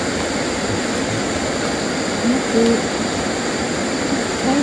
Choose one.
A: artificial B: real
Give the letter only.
B